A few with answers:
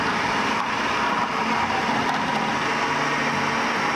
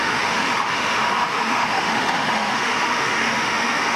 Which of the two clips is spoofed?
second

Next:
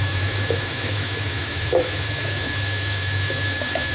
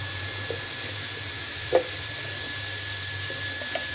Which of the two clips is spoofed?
first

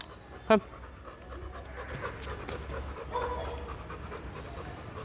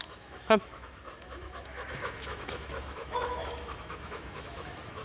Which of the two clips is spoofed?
second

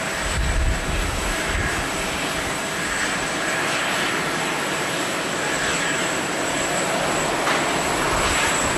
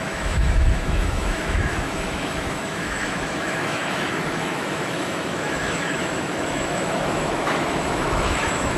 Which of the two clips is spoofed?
second